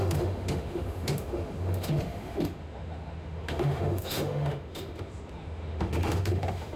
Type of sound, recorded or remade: remade